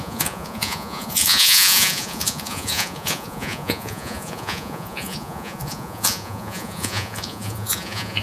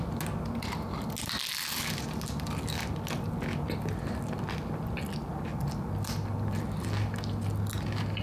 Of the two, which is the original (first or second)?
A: second